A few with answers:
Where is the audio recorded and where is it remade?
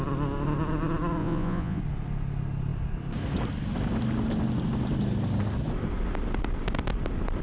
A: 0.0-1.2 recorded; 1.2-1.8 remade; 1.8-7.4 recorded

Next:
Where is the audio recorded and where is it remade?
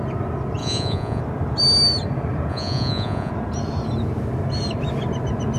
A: 0.0-0.6 recorded; 0.6-1.2 remade; 1.2-2.5 recorded; 2.5-3.3 remade; 3.3-5.6 recorded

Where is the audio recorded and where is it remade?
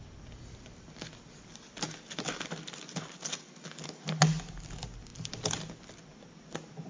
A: 0.0-6.9 recorded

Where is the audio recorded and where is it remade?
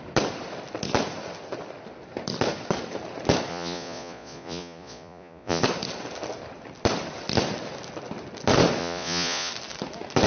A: 0.0-3.5 recorded; 3.5-5.6 remade; 5.6-8.8 recorded; 8.8-9.5 remade; 9.5-10.3 recorded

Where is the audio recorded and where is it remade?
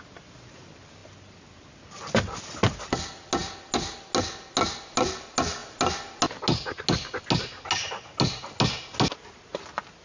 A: 0.0-10.0 recorded